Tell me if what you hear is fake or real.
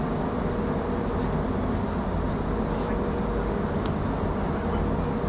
real